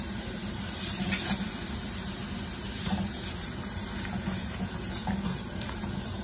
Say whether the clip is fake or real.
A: fake